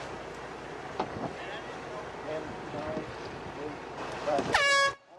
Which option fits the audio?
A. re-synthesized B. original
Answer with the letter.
B